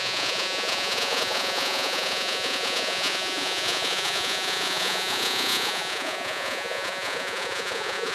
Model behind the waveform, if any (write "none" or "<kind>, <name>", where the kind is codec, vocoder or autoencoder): vocoder, Vocos